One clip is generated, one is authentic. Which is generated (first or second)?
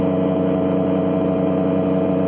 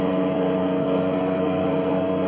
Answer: second